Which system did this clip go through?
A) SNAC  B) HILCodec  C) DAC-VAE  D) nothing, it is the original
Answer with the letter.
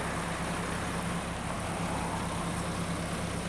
D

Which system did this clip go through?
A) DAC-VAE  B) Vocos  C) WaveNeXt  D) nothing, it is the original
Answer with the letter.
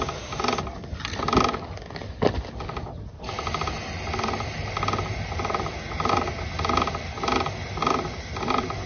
D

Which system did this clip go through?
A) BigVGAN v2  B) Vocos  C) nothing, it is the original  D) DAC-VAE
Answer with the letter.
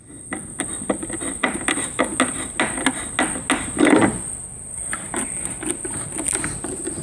C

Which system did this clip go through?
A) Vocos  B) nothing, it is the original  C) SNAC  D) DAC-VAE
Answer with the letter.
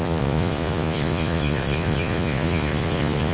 A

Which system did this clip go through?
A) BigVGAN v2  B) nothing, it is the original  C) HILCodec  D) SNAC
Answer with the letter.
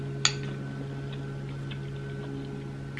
B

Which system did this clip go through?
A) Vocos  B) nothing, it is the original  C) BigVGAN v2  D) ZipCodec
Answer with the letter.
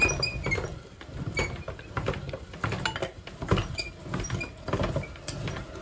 B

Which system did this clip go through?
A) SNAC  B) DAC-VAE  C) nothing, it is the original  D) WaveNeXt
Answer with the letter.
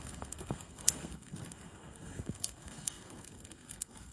A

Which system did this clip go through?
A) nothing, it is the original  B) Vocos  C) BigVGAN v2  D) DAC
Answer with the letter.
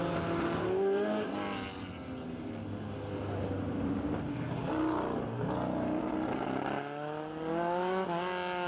A